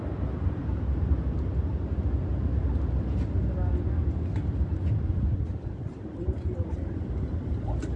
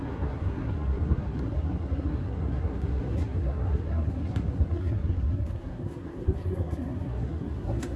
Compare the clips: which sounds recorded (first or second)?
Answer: first